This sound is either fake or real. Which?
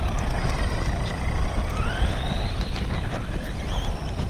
real